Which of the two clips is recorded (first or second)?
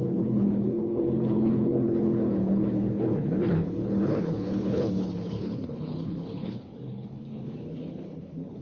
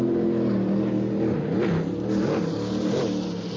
second